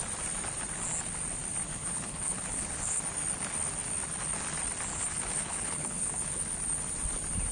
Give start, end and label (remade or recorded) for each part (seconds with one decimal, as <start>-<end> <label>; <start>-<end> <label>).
0.0-1.7 recorded; 1.7-3.0 remade; 3.0-4.9 recorded; 4.9-6.4 remade; 6.4-7.5 recorded

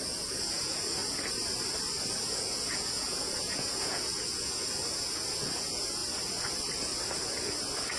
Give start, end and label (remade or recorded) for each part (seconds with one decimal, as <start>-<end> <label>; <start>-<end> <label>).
0.0-1.0 remade; 1.0-2.2 recorded; 2.2-6.0 remade; 6.0-8.0 recorded

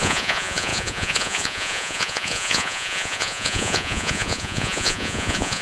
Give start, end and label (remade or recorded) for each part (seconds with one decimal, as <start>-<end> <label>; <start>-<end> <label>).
0.0-5.6 remade